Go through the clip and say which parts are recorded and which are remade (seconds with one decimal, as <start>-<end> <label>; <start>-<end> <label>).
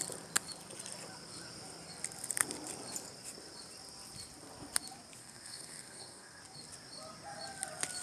0.0-5.2 recorded; 5.2-6.4 remade; 6.4-8.0 recorded